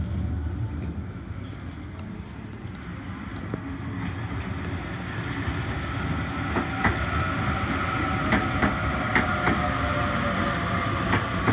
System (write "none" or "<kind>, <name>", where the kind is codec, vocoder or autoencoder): none